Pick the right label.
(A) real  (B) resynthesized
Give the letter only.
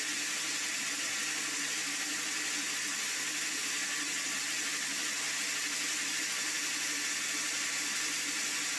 A